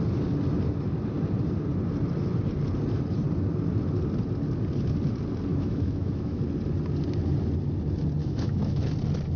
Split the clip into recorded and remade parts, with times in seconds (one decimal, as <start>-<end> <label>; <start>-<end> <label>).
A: 0.0-5.5 recorded; 5.5-6.4 remade; 6.4-8.2 recorded; 8.2-8.8 remade; 8.8-9.4 recorded